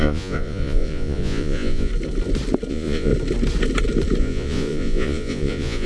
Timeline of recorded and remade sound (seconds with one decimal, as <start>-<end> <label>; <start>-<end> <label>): 0.0-1.9 remade; 1.9-2.7 recorded; 2.7-3.1 remade; 3.1-4.2 recorded; 4.2-5.9 remade